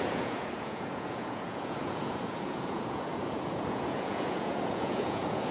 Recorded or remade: remade